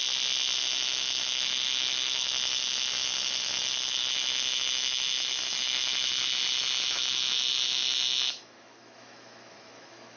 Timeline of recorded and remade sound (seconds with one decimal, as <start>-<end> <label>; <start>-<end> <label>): 0.0-0.6 recorded; 0.6-10.2 remade